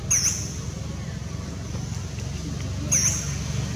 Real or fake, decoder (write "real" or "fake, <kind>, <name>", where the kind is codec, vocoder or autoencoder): real